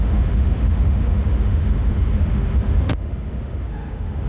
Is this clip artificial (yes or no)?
yes